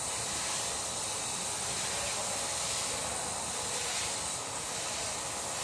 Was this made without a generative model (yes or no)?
yes